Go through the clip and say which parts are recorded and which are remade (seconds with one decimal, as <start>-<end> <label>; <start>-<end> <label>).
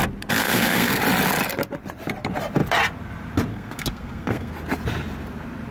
0.0-0.4 recorded; 0.4-1.0 remade; 1.0-3.5 recorded; 3.5-4.5 remade; 4.5-5.7 recorded